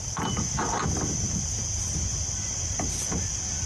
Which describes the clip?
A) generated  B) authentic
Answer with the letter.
B